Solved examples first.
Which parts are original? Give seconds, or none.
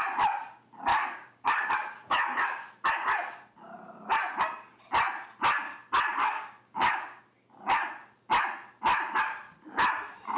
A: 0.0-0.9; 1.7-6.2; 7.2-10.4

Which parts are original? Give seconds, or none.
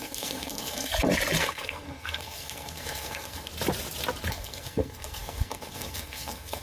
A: 0.9-1.4; 3.5-4.3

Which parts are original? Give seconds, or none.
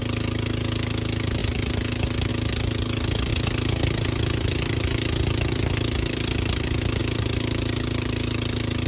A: 0.0-8.9